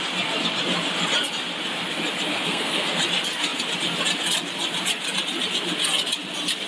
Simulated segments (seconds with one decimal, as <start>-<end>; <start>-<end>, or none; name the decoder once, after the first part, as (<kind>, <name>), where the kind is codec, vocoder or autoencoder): 2.3-3.0 (codec, SNAC)